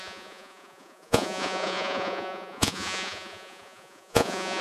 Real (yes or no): no